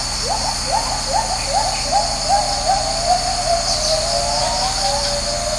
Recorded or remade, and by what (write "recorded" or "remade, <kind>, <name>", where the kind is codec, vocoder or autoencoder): recorded